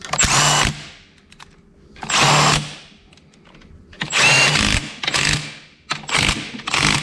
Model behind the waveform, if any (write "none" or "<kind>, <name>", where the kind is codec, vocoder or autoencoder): none